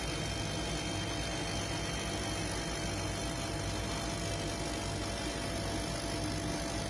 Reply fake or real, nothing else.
real